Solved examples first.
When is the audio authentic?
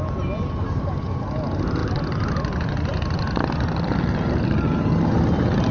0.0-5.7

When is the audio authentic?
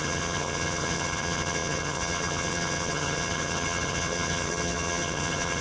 none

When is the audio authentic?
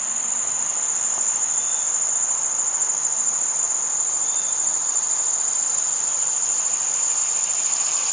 0.0-8.1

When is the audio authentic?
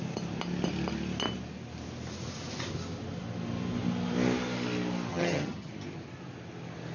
0.0-5.1; 5.7-6.9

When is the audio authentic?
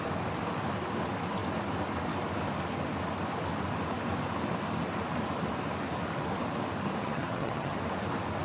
0.0-7.0; 7.8-8.4